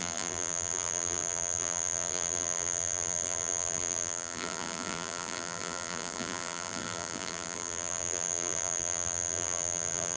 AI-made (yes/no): yes